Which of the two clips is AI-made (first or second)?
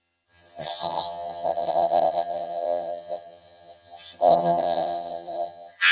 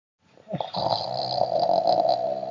first